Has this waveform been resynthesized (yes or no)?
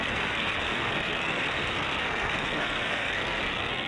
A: yes